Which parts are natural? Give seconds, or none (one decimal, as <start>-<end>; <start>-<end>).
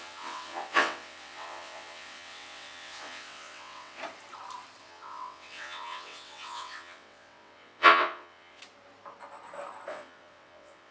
4.0-4.8; 8.6-9.9